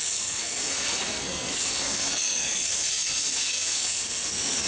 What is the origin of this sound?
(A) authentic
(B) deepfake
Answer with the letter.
B